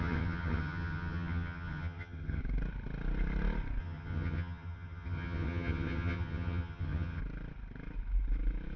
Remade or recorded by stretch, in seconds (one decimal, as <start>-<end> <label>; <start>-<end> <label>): 0.0-2.4 remade; 2.4-3.8 recorded; 3.8-7.2 remade; 7.2-8.8 recorded